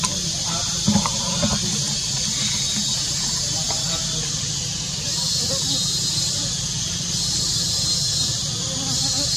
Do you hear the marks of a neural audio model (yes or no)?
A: no